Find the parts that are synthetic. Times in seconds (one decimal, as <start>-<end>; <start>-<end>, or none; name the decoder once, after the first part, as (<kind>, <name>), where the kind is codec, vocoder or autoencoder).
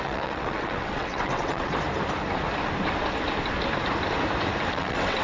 0.0-1.7 (vocoder, WaveNeXt); 4.7-5.2